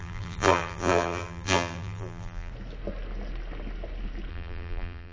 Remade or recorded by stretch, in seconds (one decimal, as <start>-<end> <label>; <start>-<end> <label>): 0.0-2.5 remade; 2.5-4.3 recorded; 4.3-5.1 remade